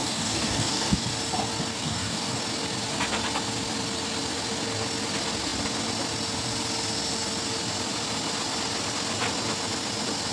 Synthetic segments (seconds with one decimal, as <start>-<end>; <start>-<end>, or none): 0.0-1.1; 1.7-2.4